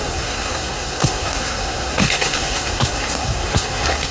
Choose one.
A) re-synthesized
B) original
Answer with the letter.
A